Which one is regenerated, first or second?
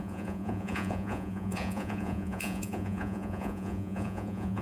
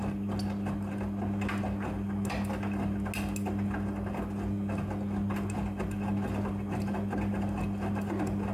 first